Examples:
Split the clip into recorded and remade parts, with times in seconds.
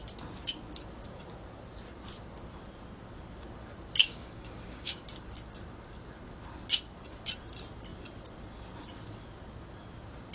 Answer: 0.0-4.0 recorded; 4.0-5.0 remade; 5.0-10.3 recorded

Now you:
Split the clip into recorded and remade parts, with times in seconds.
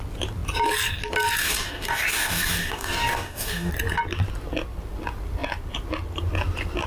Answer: 0.0-1.4 recorded; 1.4-3.7 remade; 3.7-6.9 recorded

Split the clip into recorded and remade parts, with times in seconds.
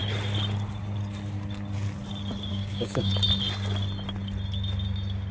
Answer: 0.0-2.5 recorded; 2.5-3.1 remade; 3.1-5.3 recorded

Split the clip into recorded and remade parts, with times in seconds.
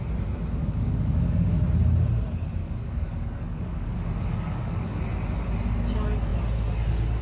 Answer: 0.0-0.6 recorded; 0.6-1.6 remade; 1.6-2.6 recorded; 2.6-5.0 remade; 5.0-7.2 recorded